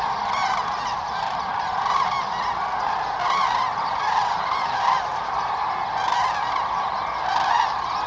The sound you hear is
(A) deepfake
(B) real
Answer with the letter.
B